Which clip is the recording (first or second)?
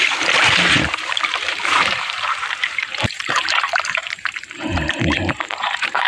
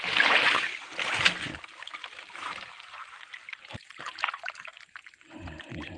second